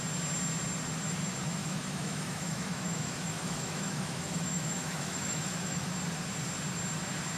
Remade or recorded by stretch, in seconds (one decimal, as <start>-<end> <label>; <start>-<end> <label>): 0.0-1.6 recorded; 1.6-5.9 remade; 5.9-7.4 recorded